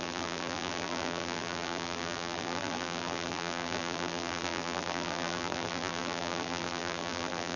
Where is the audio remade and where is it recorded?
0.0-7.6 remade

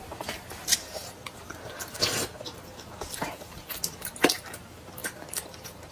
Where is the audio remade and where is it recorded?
0.0-1.2 remade; 1.2-3.3 recorded; 3.3-5.9 remade